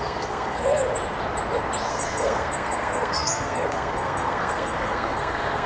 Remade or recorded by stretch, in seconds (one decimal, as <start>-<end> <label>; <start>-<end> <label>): 0.0-0.8 remade; 0.8-1.9 recorded; 1.9-5.7 remade